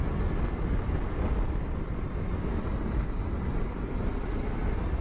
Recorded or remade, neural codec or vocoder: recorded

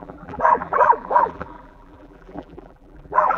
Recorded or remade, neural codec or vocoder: remade, vocoder, BigVGAN v2